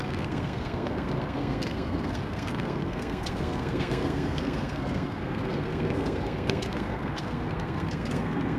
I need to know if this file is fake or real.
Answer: fake